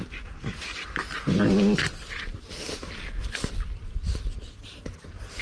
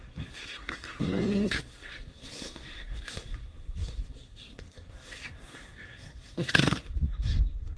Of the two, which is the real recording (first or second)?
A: first